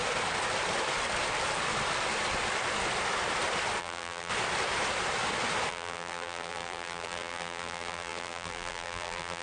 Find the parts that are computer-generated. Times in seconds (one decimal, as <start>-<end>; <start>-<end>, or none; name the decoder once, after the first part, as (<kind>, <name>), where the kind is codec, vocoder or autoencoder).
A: 3.8-4.3 (vocoder, BigVGAN v2); 5.7-9.4